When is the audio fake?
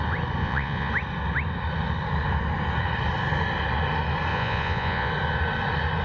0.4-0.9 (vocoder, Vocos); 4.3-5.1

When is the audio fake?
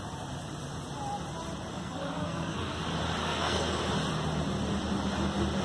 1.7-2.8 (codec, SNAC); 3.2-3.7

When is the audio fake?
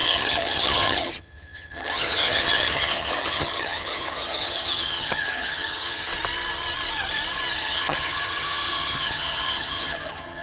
0.0-6.1 (vocoder, HiFi-GAN); 7.6-10.4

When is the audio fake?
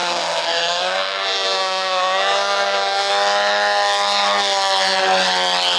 0.0-3.1 (codec, SNAC)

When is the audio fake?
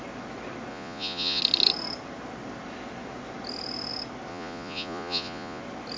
0.7-1.4 (vocoder, Vocos); 4.3-5.6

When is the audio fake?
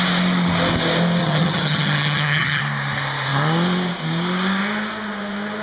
1.2-2.6 (vocoder, HiFi-GAN)